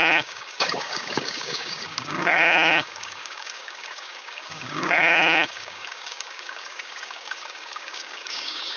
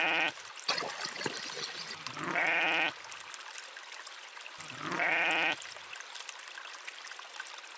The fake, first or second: first